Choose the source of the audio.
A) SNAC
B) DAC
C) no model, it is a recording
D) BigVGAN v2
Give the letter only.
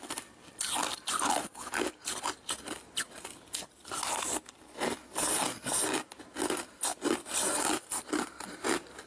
C